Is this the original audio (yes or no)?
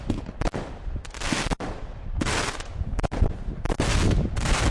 yes